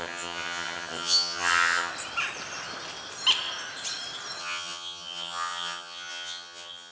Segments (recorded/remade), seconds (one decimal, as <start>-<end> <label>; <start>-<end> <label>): 0.0-1.9 remade; 1.9-4.4 recorded; 4.4-6.9 remade